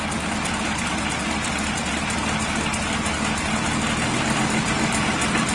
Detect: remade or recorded recorded